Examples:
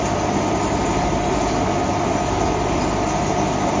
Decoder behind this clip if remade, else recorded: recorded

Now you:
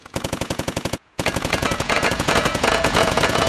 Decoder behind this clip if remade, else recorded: remade, vocoder, Vocos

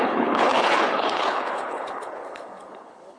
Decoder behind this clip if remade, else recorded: remade, codec, HILCodec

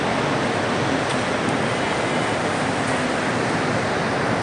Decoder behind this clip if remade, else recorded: recorded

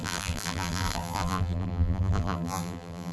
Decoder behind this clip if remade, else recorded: remade, vocoder, BigVGAN v2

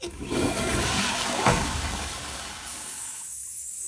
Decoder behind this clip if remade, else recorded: remade, codec, DAC